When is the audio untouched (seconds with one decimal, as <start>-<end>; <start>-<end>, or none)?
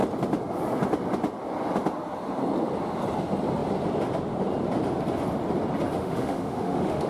0.0-6.0